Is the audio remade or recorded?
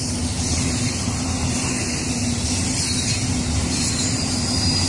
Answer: recorded